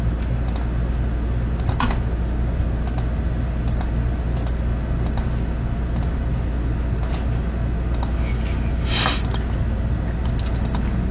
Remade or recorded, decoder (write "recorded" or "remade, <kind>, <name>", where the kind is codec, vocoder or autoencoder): recorded